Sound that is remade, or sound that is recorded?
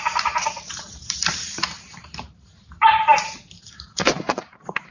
remade